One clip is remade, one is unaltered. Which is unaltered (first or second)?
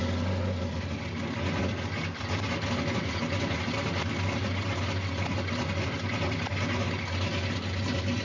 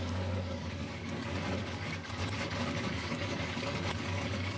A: first